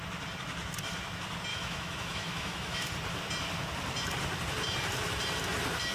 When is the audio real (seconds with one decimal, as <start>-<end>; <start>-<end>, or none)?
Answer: 0.0-1.5; 2.9-5.9